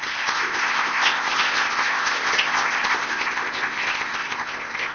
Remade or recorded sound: remade